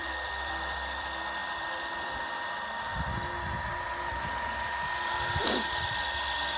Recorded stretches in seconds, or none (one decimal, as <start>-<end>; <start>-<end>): 1.4-5.4